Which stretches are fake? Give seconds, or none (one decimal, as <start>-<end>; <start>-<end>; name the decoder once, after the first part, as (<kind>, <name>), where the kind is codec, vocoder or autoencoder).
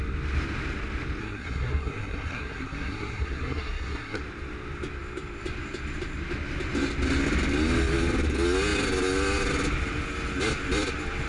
1.2-4.2 (codec, SNAC)